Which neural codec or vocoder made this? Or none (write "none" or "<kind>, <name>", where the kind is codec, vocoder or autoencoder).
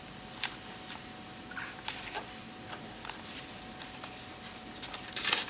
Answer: none